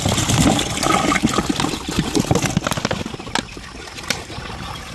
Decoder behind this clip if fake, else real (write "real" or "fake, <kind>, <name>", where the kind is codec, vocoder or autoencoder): real